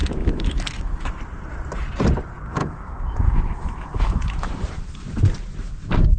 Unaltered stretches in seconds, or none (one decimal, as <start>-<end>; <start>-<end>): 1.1-2.6; 4.5-6.2